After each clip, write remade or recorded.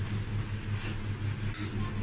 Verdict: recorded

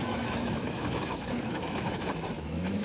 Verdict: remade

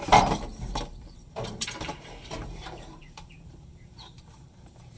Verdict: remade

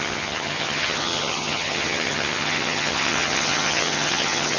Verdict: remade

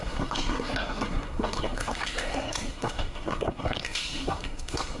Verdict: remade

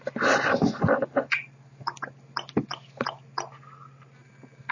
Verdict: recorded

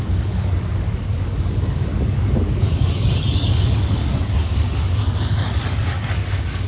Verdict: remade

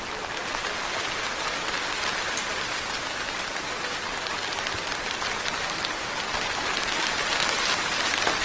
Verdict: recorded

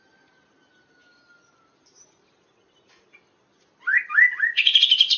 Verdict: recorded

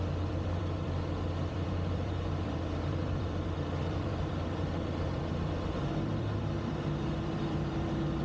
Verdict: remade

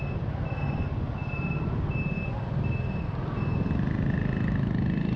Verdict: recorded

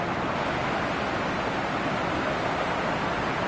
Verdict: recorded